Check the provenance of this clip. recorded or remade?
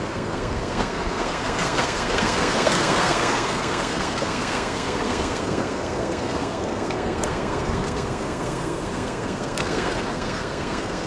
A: remade